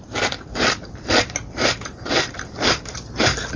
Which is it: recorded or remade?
remade